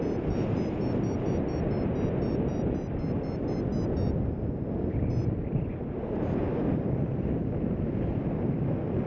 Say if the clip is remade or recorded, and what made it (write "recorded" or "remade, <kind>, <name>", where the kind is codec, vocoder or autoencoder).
recorded